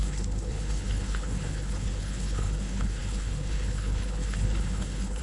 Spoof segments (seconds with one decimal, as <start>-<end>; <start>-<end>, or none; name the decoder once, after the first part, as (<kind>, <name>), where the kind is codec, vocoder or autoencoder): 0.0-5.2 (codec, HILCodec)